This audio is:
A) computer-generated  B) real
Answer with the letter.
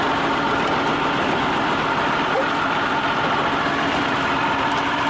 A